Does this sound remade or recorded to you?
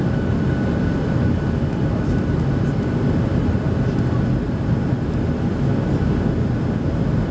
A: recorded